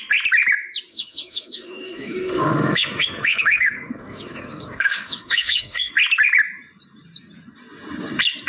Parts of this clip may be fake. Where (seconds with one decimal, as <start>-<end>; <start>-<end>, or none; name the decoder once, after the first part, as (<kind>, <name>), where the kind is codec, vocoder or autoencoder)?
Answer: 0.9-5.9 (autoencoder, DAC-VAE)